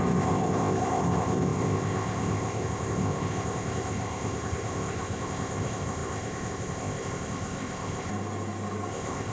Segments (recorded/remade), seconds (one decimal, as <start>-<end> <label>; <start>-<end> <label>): 0.0-8.1 remade; 8.1-8.9 recorded; 8.9-9.3 remade

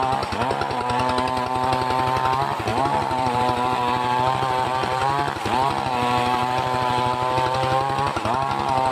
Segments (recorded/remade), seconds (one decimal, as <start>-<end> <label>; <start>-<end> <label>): 0.0-2.7 recorded; 2.7-3.4 remade; 3.4-8.9 recorded

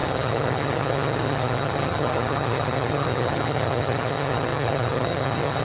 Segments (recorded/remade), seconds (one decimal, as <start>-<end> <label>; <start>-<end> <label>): 0.0-5.6 remade

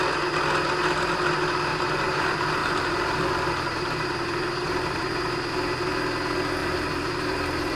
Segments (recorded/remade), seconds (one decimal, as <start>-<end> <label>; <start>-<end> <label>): 0.0-1.7 recorded; 1.7-2.2 remade; 2.2-2.6 recorded; 2.6-5.0 remade; 5.0-6.6 recorded; 6.6-7.8 remade